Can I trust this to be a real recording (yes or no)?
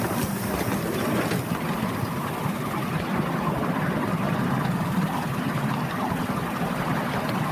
yes